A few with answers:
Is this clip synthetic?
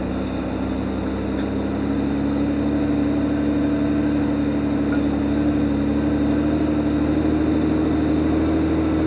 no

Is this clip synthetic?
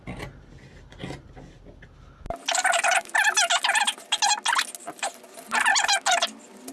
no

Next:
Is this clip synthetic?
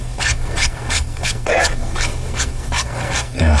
yes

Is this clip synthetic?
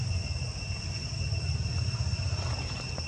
no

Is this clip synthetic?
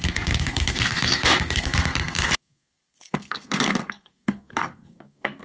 yes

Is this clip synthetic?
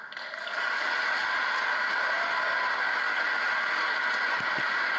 no